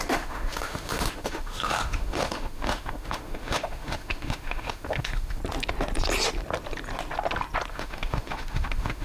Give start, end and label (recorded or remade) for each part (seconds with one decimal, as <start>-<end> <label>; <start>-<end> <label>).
0.0-5.4 remade; 5.4-7.7 recorded; 7.7-9.0 remade